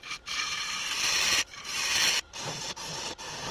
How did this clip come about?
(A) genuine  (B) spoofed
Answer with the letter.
B